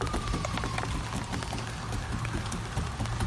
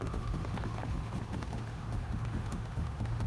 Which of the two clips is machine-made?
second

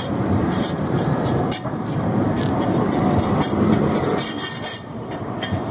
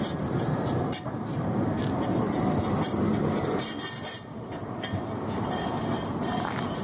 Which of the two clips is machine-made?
first